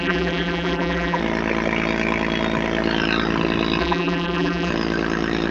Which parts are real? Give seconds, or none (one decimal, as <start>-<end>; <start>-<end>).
1.2-3.8; 4.7-5.5